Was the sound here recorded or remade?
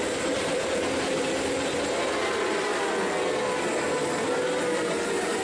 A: recorded